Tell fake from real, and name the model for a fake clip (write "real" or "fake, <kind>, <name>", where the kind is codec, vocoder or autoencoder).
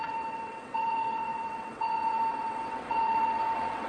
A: fake, vocoder, WaveNeXt